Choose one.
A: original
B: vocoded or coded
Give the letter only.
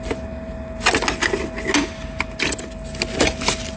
A